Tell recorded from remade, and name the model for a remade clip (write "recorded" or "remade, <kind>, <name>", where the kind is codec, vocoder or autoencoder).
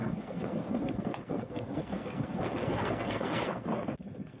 remade, codec, SNAC